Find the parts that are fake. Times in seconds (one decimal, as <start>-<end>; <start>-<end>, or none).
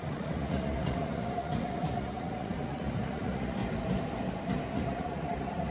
0.0-3.6; 4.7-5.7